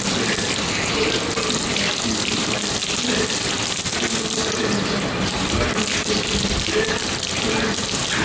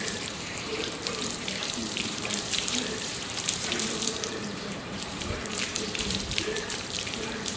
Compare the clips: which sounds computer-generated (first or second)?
second